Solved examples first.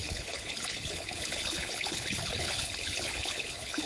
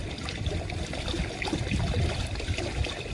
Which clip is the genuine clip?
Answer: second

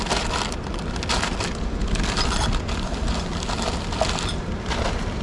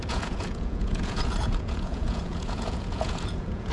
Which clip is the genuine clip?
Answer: first